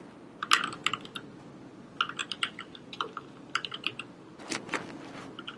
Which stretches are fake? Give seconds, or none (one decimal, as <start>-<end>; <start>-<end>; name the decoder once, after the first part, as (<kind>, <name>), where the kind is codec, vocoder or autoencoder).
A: 2.2-4.2 (vocoder, BigVGAN v2)